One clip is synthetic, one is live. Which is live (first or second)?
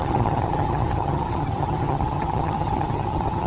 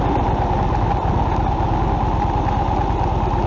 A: second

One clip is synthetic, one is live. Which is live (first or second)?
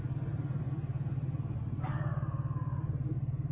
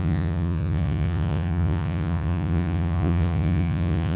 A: first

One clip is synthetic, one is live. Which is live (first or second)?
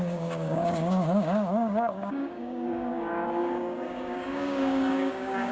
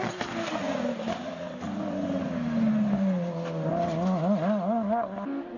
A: second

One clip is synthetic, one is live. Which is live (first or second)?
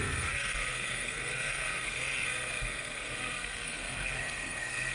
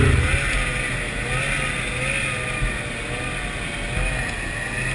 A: second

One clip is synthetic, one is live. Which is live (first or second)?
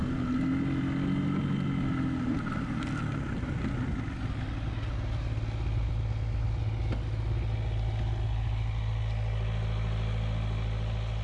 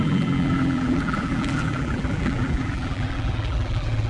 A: first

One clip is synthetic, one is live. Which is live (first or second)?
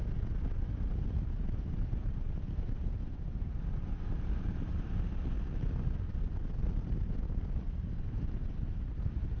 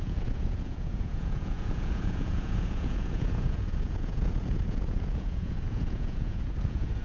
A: first